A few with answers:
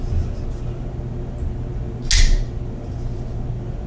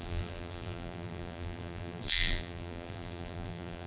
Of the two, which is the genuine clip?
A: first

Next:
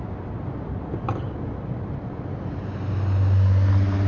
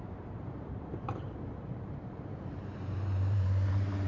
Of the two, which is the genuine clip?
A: first